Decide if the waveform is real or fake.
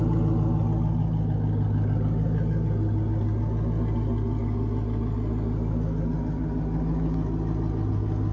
real